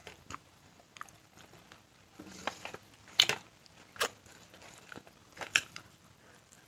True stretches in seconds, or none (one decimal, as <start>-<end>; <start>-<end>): 0.8-5.2; 6.0-6.7